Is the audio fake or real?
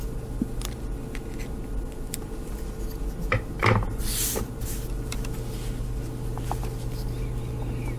real